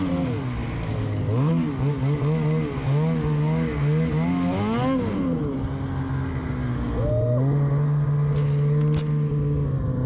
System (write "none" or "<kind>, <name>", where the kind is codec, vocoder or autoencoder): none